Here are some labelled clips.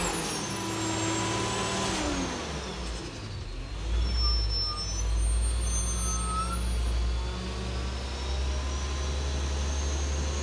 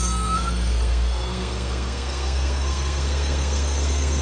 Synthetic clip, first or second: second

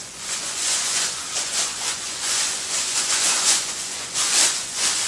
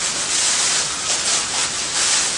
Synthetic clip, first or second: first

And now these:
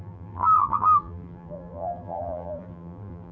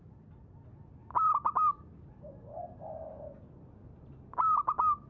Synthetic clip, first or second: first